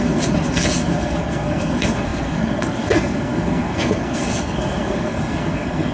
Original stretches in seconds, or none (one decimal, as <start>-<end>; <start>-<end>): none